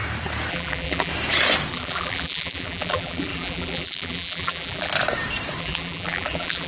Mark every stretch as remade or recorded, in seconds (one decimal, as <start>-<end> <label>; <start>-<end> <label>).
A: 0.0-0.5 recorded; 0.5-1.1 remade; 1.1-1.7 recorded; 1.7-4.9 remade; 4.9-5.6 recorded; 5.6-6.7 remade